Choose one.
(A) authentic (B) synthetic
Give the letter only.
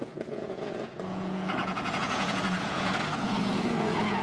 B